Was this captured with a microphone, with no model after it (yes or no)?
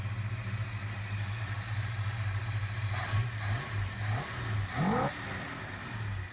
yes